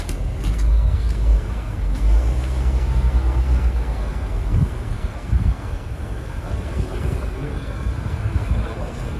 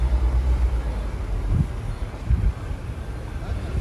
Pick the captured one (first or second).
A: second